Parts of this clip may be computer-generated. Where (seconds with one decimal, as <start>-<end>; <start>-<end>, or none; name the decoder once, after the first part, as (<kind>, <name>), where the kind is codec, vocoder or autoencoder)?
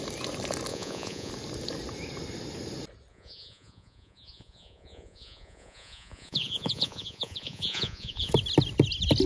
0.7-1.3 (vocoder, Vocos); 3.1-8.3